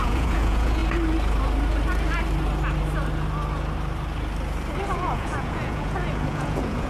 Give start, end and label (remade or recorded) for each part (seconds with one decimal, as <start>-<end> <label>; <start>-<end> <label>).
0.0-0.8 remade; 0.8-4.9 recorded; 4.9-6.9 remade